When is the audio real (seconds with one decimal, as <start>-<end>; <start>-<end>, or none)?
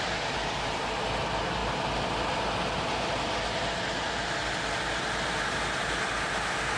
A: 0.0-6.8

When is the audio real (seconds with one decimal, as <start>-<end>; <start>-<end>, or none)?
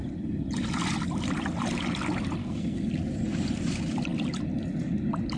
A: 0.0-2.4; 2.9-5.4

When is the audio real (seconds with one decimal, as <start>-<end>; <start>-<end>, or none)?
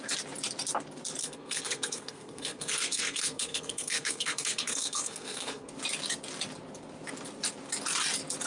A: 0.0-1.2; 5.7-8.5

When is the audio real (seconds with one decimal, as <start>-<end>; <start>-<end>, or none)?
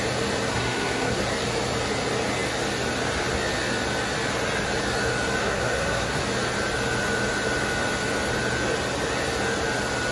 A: 0.0-0.5; 1.2-5.4; 6.2-10.1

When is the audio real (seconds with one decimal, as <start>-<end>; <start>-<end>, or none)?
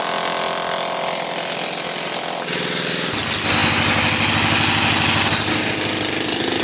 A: 0.0-6.6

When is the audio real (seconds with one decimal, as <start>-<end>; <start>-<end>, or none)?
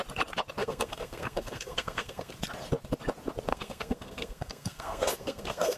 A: 0.0-0.6; 2.3-3.5